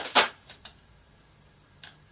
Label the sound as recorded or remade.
remade